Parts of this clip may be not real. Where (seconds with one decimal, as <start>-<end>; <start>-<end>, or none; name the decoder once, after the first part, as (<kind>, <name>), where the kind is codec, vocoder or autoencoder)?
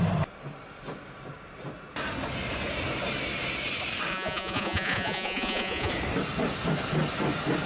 4.1-5.9 (vocoder, Vocos)